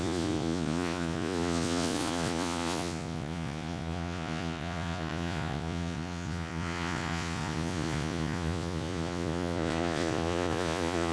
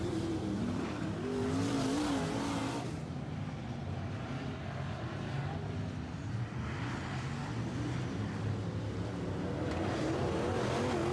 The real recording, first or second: second